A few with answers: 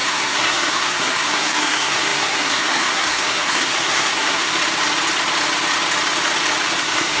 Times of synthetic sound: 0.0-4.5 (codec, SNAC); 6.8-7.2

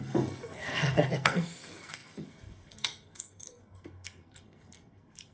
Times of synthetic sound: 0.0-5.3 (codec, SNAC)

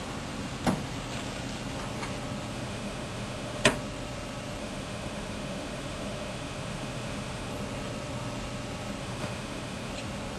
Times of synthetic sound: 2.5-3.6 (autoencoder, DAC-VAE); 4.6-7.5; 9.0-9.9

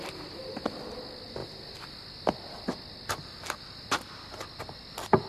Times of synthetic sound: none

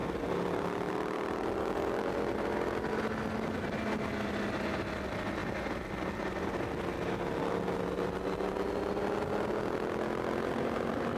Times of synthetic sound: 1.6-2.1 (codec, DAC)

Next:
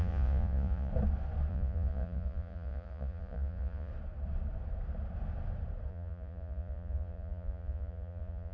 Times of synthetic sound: 0.0-0.9 (vocoder, Vocos); 1.5-3.9; 5.9-8.5

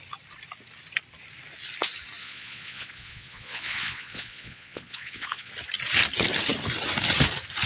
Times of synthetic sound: 2.2-5.5 (vocoder, Vocos)

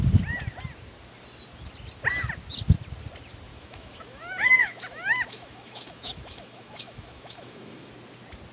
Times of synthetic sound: 3.5-7.9 (autoencoder, DAC-VAE)